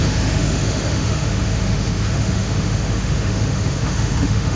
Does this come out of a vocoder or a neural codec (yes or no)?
yes